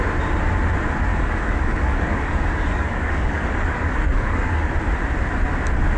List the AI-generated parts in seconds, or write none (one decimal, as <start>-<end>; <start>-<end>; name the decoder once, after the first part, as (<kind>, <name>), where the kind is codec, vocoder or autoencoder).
1.1-4.7 (codec, DAC)